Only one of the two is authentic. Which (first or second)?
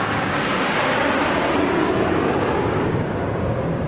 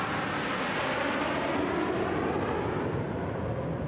second